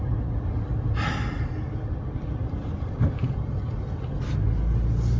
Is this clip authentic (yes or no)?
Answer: yes